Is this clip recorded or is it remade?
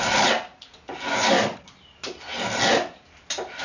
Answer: recorded